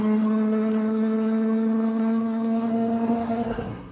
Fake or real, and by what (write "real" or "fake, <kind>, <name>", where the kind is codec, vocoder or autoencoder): fake, codec, SNAC